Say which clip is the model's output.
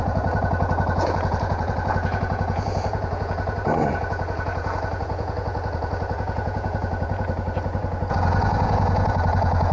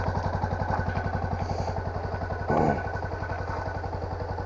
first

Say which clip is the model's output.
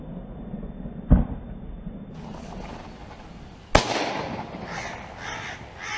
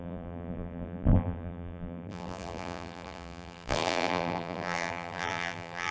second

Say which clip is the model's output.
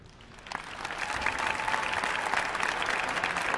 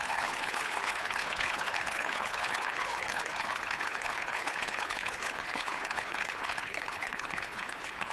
second